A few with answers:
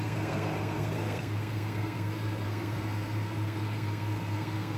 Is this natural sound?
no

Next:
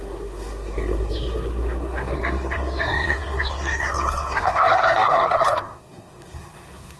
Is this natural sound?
no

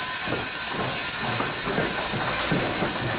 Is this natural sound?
yes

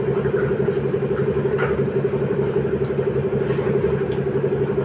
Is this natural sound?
yes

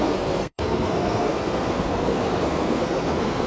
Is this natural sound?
no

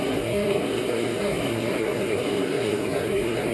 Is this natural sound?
no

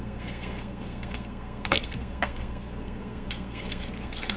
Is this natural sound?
no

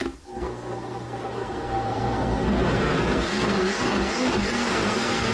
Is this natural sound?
no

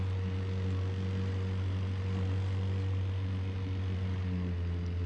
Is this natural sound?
yes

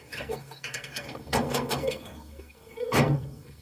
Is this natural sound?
no